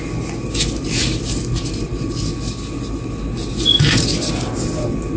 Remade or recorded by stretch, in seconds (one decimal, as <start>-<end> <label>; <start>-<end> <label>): 0.0-5.2 recorded